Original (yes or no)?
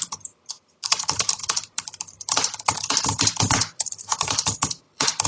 no